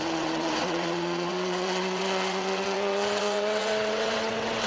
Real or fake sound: fake